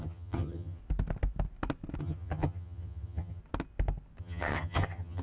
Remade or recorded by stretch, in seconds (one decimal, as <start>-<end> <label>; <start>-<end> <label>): 0.0-0.8 remade; 0.8-2.0 recorded; 2.0-3.4 remade; 3.4-4.2 recorded; 4.2-5.2 remade